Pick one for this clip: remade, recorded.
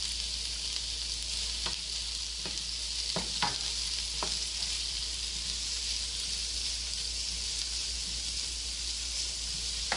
recorded